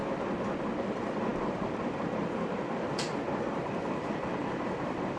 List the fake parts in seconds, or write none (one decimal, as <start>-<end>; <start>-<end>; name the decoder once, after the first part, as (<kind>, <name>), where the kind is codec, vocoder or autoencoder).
0.8-5.2 (vocoder, BigVGAN v2)